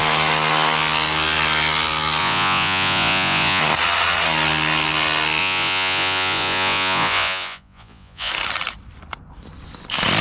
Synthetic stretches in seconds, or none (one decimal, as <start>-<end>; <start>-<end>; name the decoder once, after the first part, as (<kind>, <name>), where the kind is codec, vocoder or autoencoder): 2.2-3.6 (vocoder, Vocos); 5.4-8.3